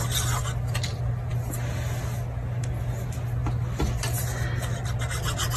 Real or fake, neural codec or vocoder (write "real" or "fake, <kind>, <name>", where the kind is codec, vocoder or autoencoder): real